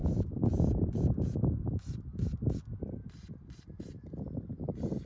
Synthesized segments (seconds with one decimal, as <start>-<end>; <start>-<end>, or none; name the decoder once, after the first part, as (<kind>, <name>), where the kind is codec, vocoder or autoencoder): 0.0-1.4 (vocoder, BigVGAN v2)